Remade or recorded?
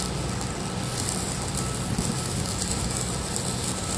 recorded